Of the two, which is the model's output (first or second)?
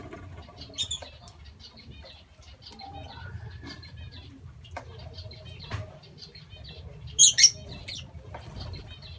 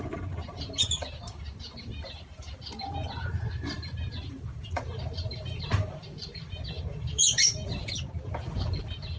second